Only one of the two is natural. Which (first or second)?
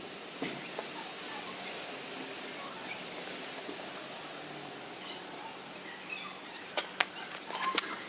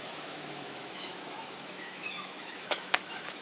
first